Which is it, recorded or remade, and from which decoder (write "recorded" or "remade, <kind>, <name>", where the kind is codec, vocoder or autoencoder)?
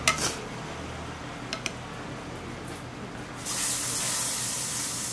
recorded